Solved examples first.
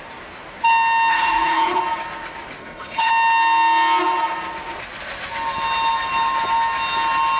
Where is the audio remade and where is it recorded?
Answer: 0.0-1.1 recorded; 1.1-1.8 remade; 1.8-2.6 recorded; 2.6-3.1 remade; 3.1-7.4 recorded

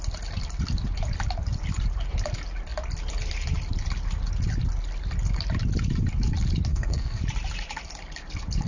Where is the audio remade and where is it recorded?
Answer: 0.0-6.7 recorded; 6.7-7.2 remade; 7.2-8.7 recorded

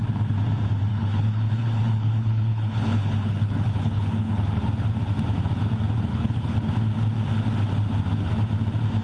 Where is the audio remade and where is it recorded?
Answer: 0.0-0.9 recorded; 0.9-4.6 remade; 4.6-6.1 recorded; 6.1-6.7 remade; 6.7-9.0 recorded

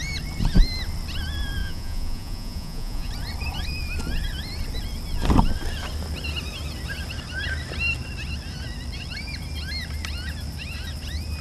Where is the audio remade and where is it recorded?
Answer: 0.0-1.6 recorded; 1.6-3.1 remade; 3.1-11.4 recorded

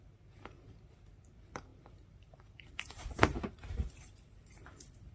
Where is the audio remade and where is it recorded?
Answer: 0.0-5.1 remade

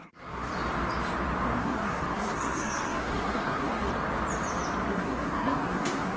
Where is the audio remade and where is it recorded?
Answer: 0.0-0.5 remade; 0.5-1.6 recorded; 1.6-3.9 remade; 3.9-4.9 recorded; 4.9-6.2 remade